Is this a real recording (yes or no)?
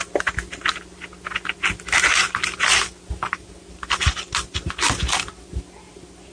yes